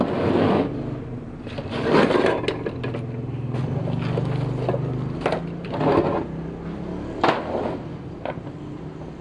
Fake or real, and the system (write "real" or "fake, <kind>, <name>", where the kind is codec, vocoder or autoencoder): real